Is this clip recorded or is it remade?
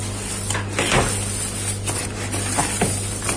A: recorded